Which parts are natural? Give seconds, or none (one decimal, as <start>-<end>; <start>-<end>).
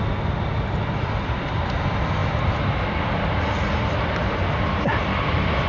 0.0-5.7